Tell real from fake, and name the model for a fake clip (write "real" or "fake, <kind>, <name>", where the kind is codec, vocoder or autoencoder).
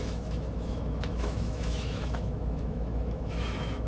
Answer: fake, autoencoder, DAC-VAE